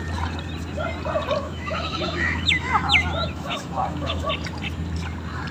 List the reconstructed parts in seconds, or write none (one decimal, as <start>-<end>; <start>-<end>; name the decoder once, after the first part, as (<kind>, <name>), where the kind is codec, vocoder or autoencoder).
1.4-4.3 (autoencoder, DAC-VAE)